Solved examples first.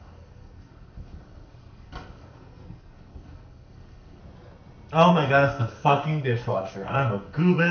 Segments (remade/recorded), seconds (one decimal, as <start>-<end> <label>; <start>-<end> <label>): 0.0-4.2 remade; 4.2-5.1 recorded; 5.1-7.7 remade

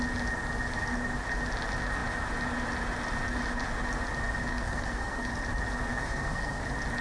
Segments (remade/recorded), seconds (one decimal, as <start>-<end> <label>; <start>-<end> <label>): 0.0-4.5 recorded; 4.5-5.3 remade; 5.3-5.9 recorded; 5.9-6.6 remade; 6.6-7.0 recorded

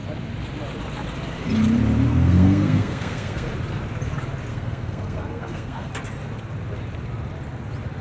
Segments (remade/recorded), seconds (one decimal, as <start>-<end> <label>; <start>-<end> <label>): 0.0-2.1 recorded; 2.1-3.5 remade; 3.5-4.5 recorded; 4.5-5.9 remade; 5.9-8.0 recorded

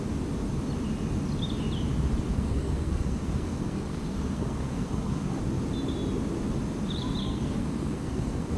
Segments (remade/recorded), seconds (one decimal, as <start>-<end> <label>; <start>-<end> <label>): 0.0-2.3 recorded; 2.3-5.4 remade; 5.4-7.2 recorded; 7.2-8.6 remade